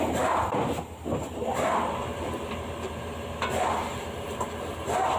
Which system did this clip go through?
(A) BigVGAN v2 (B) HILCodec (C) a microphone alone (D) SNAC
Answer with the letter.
C